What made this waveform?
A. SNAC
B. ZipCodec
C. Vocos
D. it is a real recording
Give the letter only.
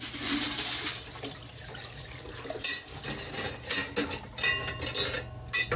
D